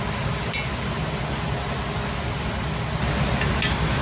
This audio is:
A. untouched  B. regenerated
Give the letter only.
A